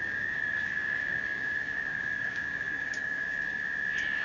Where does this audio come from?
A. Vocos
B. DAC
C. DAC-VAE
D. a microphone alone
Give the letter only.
B